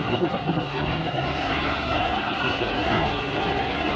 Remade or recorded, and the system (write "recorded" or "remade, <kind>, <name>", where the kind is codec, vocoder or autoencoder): remade, codec, SNAC